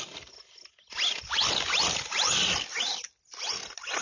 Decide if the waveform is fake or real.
real